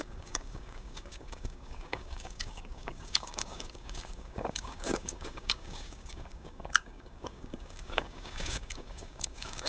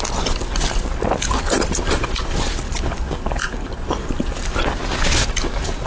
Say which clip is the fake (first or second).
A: first